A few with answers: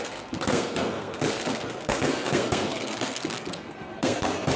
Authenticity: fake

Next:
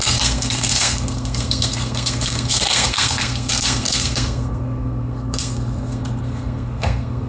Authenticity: fake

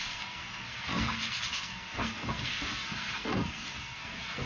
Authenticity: fake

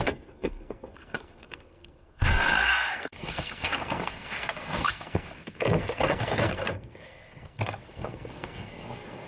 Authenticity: fake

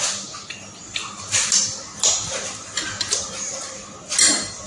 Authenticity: real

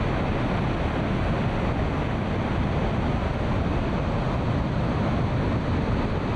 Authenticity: real